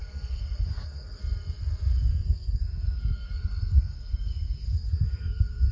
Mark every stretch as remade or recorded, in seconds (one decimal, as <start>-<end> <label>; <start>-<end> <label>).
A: 0.0-1.2 remade; 1.2-2.1 recorded; 2.1-5.7 remade